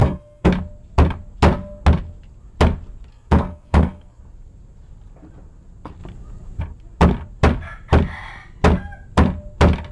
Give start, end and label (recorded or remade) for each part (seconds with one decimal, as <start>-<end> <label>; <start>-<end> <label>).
0.0-0.5 remade; 0.5-3.1 recorded; 3.1-4.2 remade; 4.2-9.9 recorded